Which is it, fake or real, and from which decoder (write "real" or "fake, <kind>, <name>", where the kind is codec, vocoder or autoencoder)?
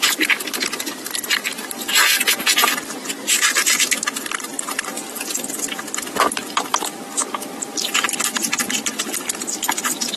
fake, vocoder, BigVGAN v2